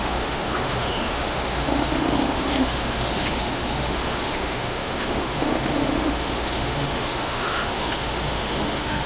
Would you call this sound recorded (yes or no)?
no